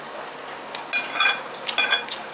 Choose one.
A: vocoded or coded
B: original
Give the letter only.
B